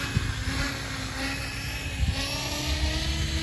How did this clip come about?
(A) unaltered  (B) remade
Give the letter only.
A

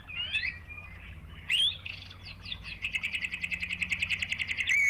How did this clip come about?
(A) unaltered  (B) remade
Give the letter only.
A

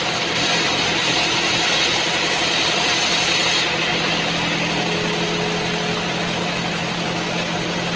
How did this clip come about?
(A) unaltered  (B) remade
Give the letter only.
A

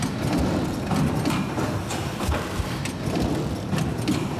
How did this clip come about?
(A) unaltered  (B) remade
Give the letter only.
A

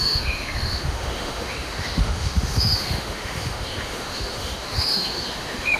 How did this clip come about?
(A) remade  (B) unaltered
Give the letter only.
A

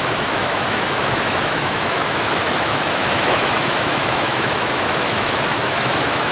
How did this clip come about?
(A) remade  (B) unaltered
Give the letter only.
A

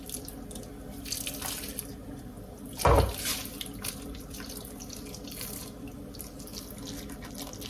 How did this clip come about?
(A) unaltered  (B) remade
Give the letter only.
A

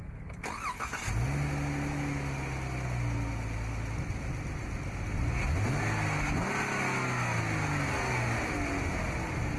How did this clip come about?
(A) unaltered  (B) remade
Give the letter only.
A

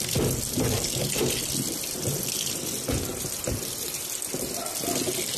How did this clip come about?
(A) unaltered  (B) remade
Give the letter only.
A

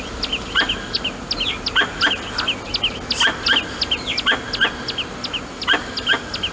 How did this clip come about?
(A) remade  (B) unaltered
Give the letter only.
B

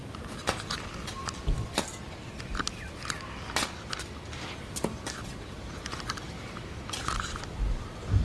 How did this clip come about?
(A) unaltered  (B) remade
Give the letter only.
A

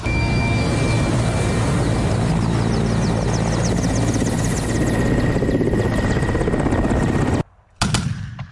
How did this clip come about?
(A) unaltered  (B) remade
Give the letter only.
A